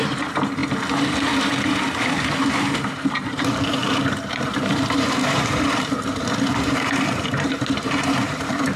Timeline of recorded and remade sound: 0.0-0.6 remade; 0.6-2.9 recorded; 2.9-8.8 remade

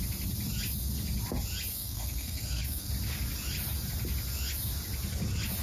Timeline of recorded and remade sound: 0.0-1.7 recorded; 1.7-2.9 remade; 2.9-5.6 recorded

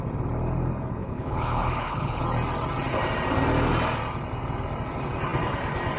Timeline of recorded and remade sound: 0.0-1.0 recorded; 1.0-2.2 remade; 2.2-6.0 recorded

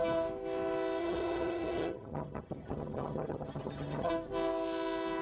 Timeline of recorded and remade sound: 0.0-1.0 recorded; 1.0-4.1 remade; 4.1-5.2 recorded